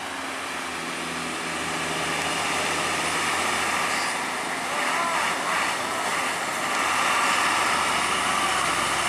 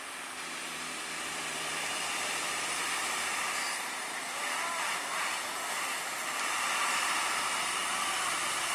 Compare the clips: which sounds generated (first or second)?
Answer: second